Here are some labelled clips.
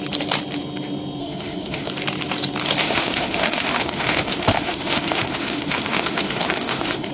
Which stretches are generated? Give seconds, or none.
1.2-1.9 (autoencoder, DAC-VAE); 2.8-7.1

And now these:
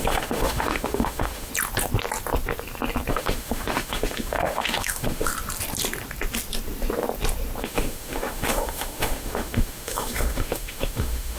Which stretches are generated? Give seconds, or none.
0.0-1.5 (autoencoder, DAC-VAE); 3.1-5.3; 7.6-11.4

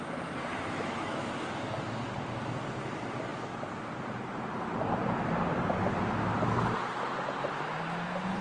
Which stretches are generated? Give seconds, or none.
0.5-1.7 (autoencoder, DAC-VAE)

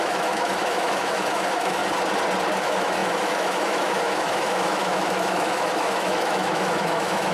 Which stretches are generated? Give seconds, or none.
0.0-1.8 (autoencoder, DAC-VAE); 2.6-7.3

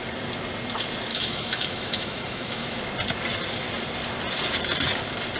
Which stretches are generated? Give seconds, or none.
1.1-2.8 (autoencoder, DAC-VAE)

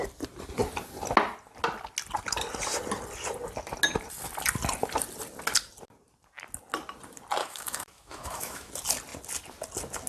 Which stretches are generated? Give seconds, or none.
7.4-8.7 (autoencoder, DAC-VAE)

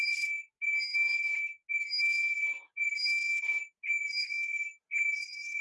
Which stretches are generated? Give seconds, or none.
none